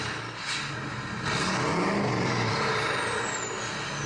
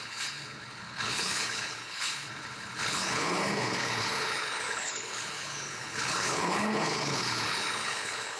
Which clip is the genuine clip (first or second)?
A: first